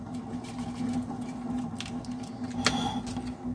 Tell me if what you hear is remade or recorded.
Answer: recorded